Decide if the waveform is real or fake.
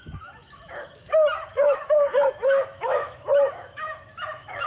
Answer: fake